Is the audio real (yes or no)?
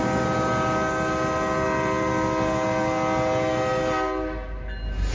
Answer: yes